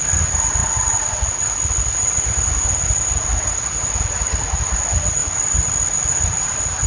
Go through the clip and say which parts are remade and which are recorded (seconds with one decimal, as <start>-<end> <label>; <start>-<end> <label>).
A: 0.0-0.6 recorded; 0.6-1.1 remade; 1.1-6.9 recorded